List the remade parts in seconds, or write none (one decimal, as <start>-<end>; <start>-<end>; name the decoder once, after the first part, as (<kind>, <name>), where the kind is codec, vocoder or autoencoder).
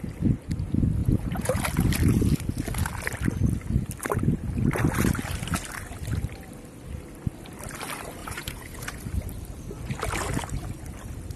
1.0-1.6 (vocoder, Vocos); 8.2-9.0